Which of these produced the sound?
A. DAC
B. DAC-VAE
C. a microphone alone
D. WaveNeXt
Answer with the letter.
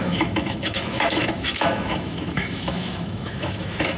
B